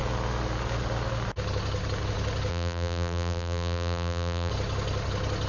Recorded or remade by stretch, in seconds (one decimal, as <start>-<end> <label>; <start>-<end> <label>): 0.0-2.5 recorded; 2.5-4.5 remade; 4.5-5.5 recorded